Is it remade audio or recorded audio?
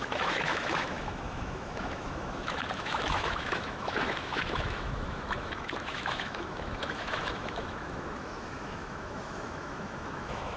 remade